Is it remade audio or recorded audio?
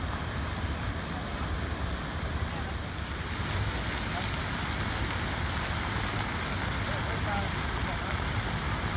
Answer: recorded